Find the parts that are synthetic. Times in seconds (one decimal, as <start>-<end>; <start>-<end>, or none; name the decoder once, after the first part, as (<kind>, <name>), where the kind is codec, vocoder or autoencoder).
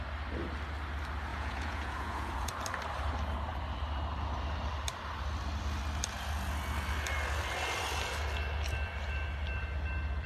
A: 1.3-2.5 (vocoder, Vocos)